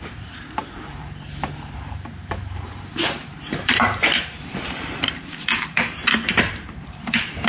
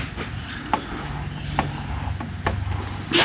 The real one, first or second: second